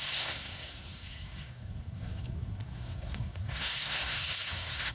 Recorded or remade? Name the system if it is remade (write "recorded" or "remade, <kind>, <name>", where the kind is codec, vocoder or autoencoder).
remade, codec, SNAC